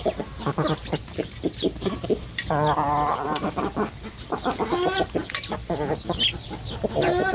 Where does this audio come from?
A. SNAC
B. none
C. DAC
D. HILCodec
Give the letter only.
B